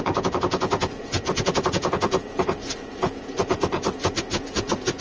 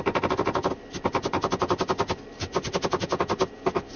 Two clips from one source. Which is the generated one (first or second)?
first